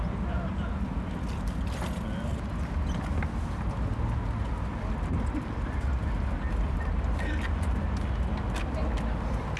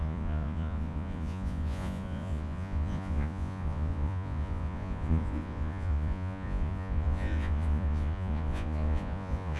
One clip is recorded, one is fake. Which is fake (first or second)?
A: second